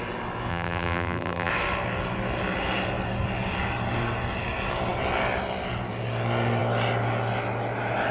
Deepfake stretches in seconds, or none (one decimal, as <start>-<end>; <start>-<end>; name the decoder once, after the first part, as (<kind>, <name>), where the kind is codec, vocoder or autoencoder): 0.5-1.5 (vocoder, BigVGAN v2)